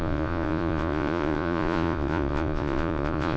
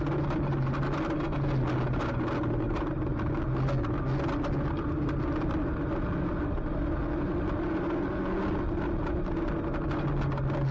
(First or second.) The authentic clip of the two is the second